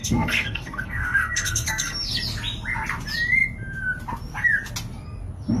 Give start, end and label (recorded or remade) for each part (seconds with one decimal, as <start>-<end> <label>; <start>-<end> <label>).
0.0-2.1 remade; 2.1-5.6 recorded